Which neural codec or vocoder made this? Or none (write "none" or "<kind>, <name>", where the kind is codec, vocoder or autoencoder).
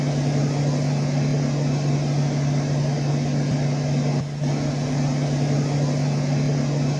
none